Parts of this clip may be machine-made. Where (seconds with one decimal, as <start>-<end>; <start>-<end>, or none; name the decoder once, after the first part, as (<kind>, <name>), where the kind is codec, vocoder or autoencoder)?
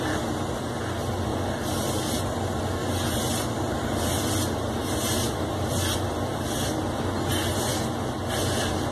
2.8-6.8 (vocoder, BigVGAN v2)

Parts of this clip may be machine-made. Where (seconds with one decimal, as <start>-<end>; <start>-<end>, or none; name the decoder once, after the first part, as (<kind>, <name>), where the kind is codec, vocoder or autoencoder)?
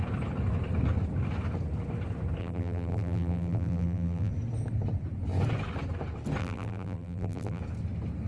2.4-4.3 (vocoder, BigVGAN v2); 6.4-7.6